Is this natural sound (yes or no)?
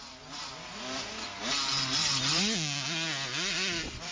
yes